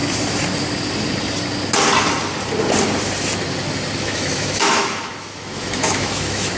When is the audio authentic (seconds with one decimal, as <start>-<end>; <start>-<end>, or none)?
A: 0.0-4.0